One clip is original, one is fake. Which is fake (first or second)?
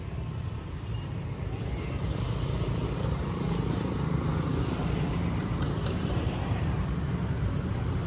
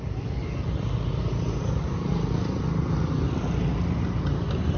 first